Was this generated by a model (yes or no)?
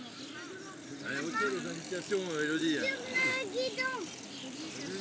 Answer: no